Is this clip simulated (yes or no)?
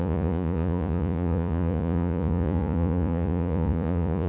yes